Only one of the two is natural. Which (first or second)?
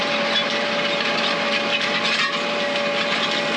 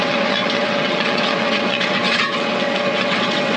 first